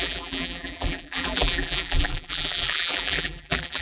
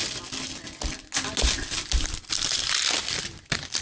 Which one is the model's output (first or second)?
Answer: first